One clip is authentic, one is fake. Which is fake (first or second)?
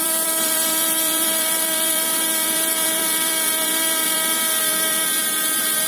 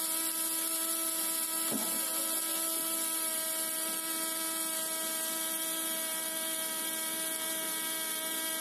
first